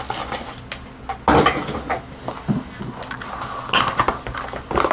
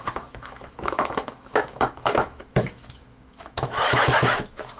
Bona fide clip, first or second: first